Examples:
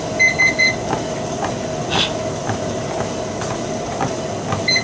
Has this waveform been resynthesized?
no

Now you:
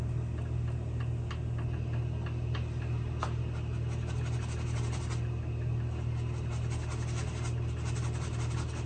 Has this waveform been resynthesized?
no